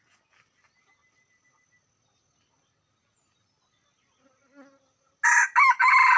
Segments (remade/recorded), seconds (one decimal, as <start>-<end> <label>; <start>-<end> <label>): 0.0-6.2 recorded